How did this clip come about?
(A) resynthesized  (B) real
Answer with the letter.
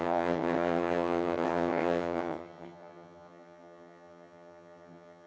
A